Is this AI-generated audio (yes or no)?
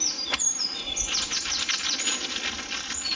no